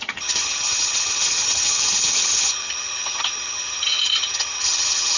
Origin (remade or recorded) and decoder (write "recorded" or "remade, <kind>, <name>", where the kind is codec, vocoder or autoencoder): remade, vocoder, HiFi-GAN